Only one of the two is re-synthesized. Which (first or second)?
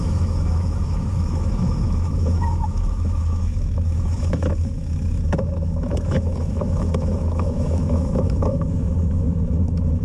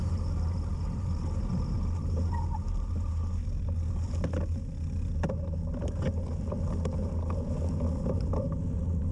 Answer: first